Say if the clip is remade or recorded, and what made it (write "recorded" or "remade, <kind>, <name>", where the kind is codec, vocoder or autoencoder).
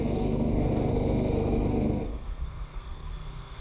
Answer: remade, codec, SNAC